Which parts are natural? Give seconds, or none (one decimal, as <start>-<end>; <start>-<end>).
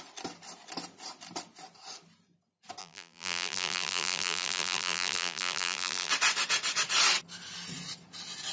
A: 0.0-2.8; 6.1-8.5